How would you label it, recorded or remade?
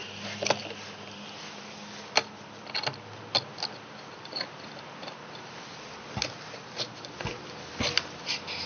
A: recorded